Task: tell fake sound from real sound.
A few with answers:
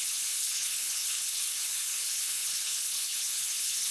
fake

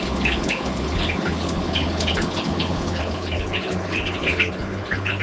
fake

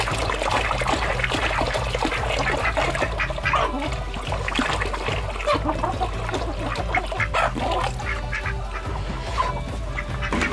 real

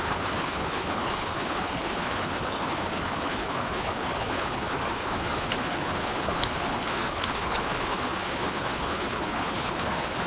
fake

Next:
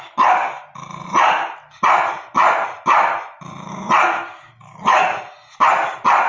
real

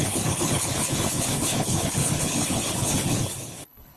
fake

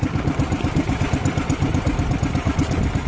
real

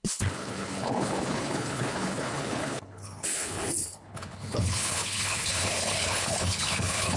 fake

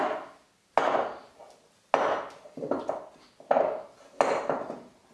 real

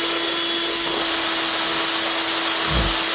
real